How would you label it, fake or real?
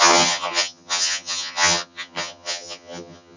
fake